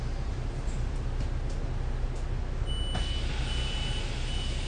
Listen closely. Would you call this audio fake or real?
real